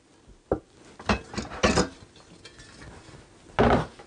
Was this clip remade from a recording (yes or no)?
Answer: no